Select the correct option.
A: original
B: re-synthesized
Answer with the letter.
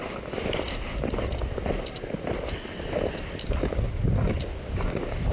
A